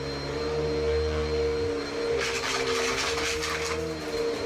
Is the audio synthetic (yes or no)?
no